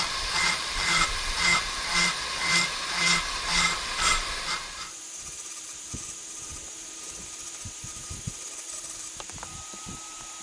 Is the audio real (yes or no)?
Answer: no